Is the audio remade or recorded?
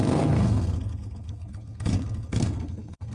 remade